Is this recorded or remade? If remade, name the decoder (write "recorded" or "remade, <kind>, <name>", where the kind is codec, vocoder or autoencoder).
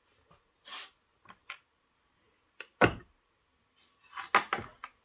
recorded